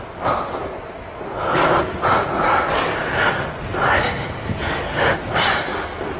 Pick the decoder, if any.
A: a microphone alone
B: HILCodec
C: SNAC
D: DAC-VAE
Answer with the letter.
A